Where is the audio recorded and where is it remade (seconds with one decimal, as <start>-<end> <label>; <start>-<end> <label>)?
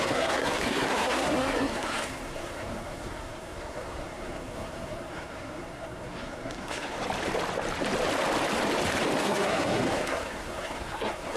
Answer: 0.0-7.0 remade; 7.0-9.2 recorded; 9.2-11.4 remade